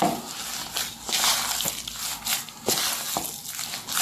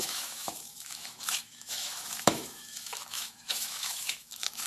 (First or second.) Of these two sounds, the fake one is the second